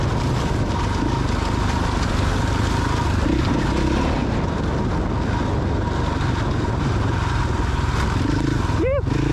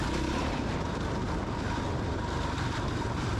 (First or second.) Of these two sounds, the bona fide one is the first